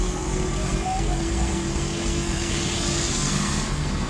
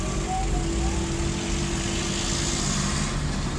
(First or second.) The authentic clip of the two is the second